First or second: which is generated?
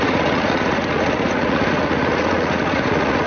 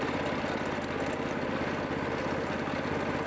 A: first